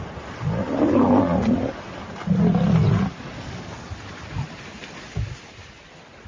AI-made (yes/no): no